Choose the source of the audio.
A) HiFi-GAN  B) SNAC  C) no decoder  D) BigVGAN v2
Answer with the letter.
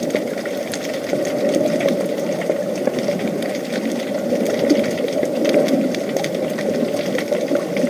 C